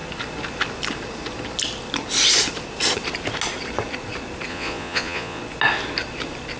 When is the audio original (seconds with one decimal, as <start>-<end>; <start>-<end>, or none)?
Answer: 0.0-4.5; 5.4-6.6